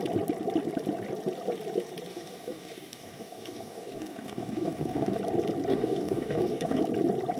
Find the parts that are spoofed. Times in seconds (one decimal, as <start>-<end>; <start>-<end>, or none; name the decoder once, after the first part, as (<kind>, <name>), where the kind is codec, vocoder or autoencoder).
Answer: 2.1-5.2 (codec, DAC); 5.7-6.8